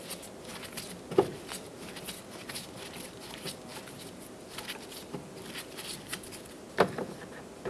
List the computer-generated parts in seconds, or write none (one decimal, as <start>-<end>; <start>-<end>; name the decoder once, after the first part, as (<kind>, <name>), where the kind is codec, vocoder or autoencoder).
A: none